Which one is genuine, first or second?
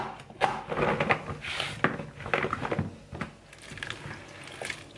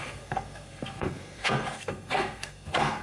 first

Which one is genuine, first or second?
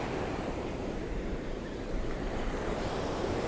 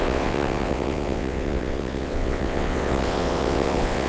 first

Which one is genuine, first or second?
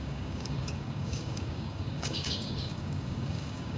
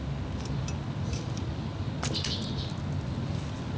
second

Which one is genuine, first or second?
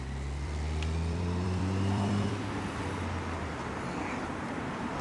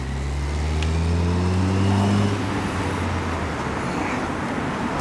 second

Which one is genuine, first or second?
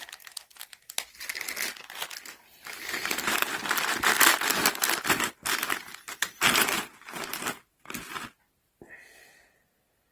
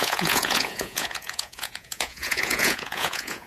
first